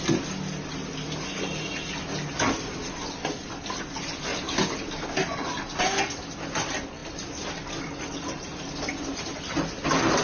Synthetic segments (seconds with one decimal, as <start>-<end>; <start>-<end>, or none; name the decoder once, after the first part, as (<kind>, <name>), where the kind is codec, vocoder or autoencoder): none